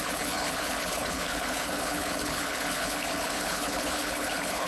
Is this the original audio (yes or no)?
no